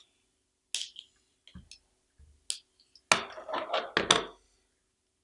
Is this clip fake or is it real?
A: real